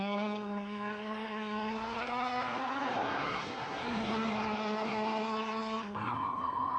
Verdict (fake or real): fake